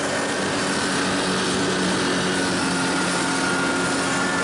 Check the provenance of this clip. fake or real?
real